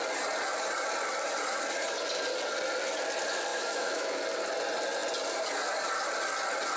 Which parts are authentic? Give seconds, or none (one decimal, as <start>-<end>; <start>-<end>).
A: 0.0-3.5; 4.2-6.8